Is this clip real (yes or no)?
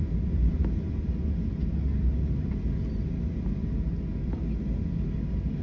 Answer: yes